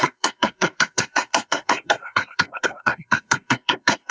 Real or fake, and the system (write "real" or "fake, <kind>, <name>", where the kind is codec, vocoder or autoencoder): fake, codec, SNAC